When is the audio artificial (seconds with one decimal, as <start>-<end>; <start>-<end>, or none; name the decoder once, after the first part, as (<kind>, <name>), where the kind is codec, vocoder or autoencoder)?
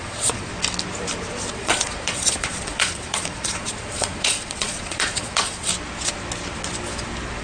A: 0.0-0.5 (vocoder, Vocos); 1.5-5.7